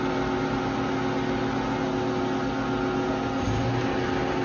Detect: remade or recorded recorded